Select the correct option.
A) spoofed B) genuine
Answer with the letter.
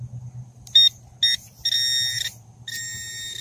B